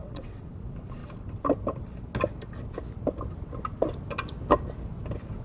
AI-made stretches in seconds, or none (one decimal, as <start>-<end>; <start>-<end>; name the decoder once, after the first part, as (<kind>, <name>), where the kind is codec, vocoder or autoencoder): 0.0-0.5 (vocoder, WaveNeXt)